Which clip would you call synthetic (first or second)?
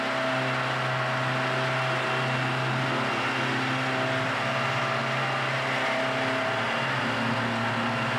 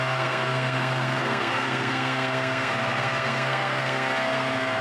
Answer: second